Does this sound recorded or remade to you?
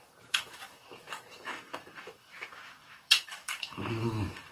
remade